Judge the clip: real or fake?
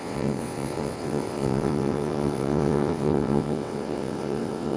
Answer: fake